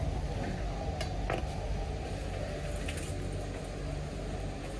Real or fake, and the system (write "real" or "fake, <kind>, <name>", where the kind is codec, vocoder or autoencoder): real